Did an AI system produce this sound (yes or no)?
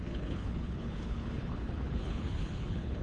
yes